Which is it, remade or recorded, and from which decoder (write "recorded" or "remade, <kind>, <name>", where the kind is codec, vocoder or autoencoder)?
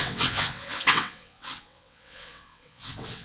remade, vocoder, WaveNeXt